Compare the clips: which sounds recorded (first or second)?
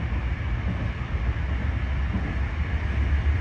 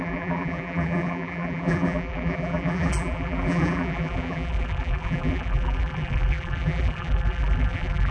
first